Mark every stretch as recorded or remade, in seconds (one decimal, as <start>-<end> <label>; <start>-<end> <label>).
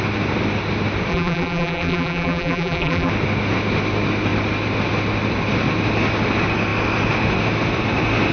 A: 0.0-1.1 recorded; 1.1-3.1 remade; 3.1-8.3 recorded